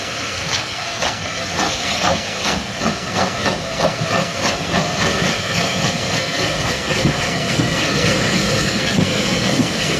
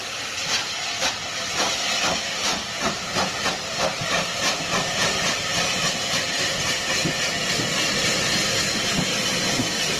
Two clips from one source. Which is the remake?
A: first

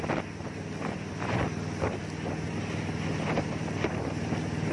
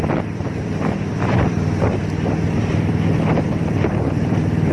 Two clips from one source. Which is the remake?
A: second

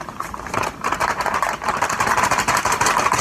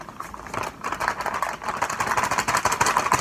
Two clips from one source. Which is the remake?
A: first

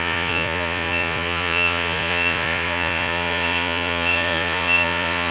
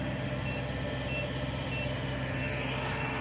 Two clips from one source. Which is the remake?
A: first